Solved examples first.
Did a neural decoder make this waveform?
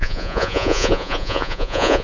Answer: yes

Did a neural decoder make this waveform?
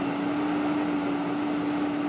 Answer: no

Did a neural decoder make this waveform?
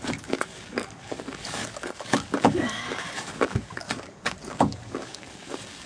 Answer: yes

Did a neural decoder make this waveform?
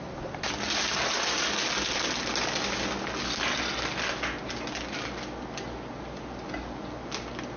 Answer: no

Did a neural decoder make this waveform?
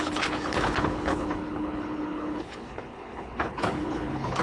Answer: yes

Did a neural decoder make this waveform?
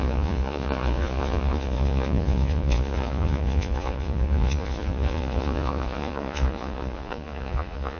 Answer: yes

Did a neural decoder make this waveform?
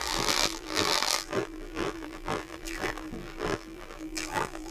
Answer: yes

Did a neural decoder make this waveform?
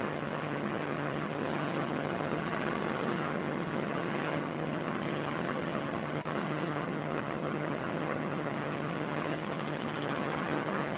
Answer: yes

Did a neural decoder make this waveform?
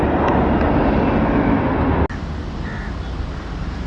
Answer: no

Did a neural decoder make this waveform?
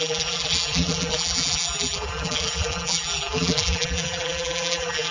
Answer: yes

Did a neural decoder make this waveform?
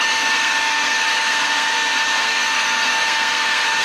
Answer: yes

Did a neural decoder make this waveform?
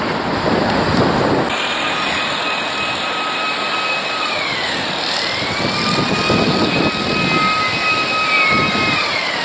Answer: no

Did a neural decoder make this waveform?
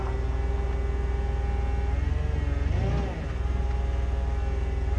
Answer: no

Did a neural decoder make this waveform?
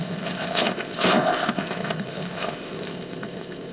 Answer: yes